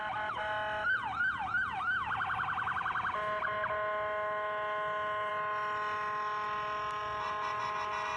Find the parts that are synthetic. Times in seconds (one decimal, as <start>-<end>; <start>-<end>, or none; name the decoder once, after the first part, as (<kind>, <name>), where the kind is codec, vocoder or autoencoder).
none